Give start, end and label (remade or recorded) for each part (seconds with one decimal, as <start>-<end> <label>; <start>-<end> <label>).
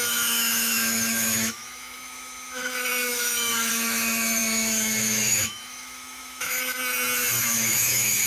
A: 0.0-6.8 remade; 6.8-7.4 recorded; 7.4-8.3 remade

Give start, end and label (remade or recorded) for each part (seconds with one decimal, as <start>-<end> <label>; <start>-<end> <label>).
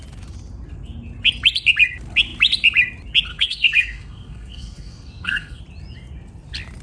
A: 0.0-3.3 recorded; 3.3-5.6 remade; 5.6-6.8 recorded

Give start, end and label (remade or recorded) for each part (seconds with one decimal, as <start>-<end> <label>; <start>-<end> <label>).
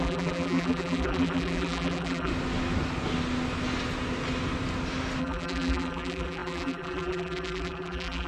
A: 0.0-2.3 remade; 2.3-5.2 recorded; 5.2-8.3 remade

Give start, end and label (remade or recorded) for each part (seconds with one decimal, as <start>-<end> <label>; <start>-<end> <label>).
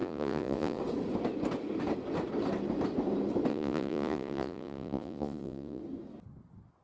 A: 0.0-0.8 remade; 0.8-3.5 recorded; 3.5-5.8 remade; 5.8-6.8 recorded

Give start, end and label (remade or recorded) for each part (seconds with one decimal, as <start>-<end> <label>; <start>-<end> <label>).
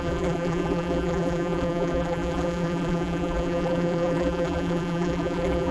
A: 0.0-5.7 remade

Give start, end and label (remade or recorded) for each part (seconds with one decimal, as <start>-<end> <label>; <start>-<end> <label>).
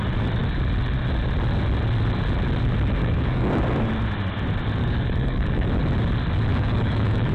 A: 0.0-3.0 recorded; 3.0-3.6 remade; 3.6-4.8 recorded; 4.8-5.7 remade; 5.7-6.5 recorded; 6.5-7.3 remade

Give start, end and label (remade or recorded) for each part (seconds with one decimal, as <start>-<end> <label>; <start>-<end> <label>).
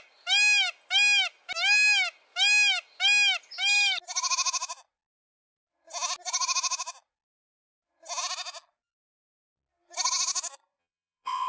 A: 0.0-10.8 recorded; 10.8-11.5 remade